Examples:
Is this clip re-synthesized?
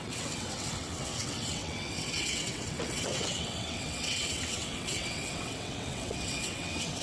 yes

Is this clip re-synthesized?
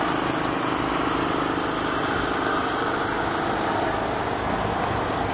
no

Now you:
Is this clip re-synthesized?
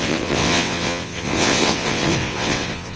yes